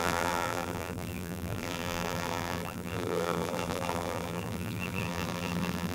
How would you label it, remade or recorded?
remade